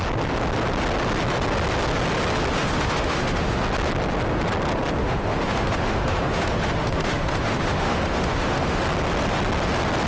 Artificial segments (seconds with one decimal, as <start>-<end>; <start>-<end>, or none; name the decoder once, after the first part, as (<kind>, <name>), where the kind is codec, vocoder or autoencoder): 2.5-3.6 (autoencoder, DAC-VAE); 5.0-8.8